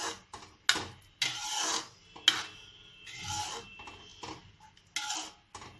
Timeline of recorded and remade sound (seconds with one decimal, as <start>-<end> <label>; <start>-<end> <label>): 0.0-5.8 recorded